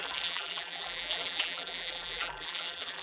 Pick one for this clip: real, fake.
fake